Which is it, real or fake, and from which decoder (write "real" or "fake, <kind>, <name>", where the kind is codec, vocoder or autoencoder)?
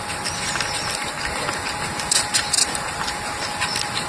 real